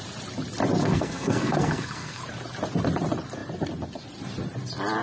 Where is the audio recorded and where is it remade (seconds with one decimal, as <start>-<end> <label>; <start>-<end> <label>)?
0.0-0.8 recorded; 0.8-2.2 remade; 2.2-5.0 recorded